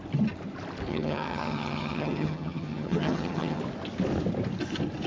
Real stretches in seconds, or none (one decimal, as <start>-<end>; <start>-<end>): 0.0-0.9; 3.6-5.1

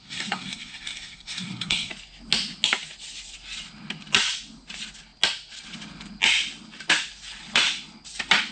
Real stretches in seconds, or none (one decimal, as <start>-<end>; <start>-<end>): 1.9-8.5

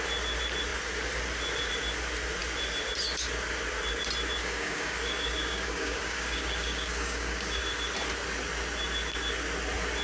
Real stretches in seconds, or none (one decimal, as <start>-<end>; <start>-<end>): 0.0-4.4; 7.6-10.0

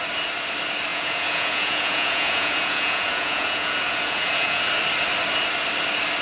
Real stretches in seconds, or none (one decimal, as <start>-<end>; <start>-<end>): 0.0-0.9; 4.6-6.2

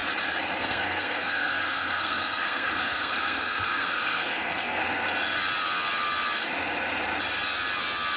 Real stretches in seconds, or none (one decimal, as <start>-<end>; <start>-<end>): 0.0-0.6; 4.8-8.2

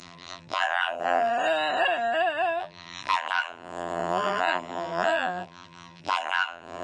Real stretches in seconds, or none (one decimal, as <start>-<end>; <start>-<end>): 1.3-2.6